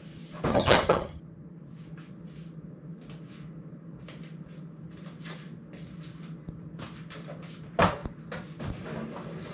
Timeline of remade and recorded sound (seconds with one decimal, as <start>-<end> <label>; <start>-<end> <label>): 0.0-0.5 recorded; 0.5-1.2 remade; 1.2-9.5 recorded